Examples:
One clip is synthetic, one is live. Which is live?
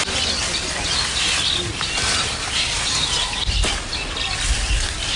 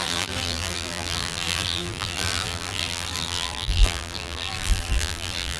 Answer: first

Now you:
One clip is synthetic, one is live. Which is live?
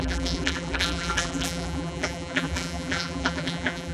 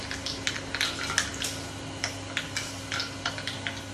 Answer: second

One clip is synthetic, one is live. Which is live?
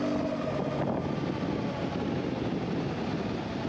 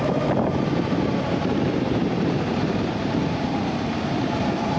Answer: first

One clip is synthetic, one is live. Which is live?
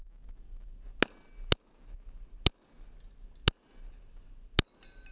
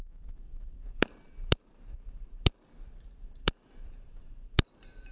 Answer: first